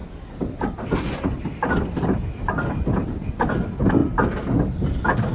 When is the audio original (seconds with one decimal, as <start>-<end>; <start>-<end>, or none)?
0.0-5.3